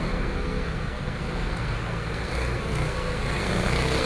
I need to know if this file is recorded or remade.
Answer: remade